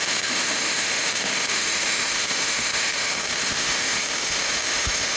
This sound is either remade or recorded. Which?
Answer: remade